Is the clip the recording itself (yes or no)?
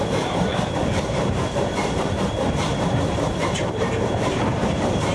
no